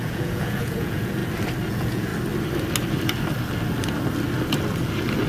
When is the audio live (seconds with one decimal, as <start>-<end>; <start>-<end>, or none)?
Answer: 1.2-1.7; 2.1-5.3

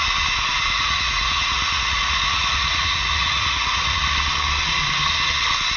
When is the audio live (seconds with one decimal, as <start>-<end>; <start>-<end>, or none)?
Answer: 0.0-0.5; 4.0-5.8

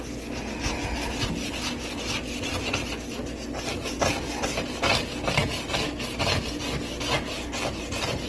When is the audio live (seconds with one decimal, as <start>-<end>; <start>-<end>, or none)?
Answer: 0.0-8.3